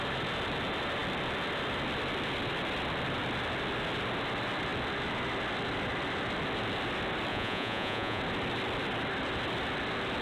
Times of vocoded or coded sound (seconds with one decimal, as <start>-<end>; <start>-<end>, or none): 7.3-8.2